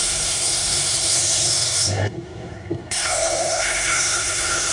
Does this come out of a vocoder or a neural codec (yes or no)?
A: yes